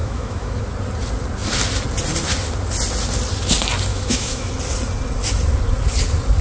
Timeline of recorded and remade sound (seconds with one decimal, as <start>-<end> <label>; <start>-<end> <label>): 0.0-0.6 remade; 0.6-3.9 recorded; 3.9-4.5 remade; 4.5-6.4 recorded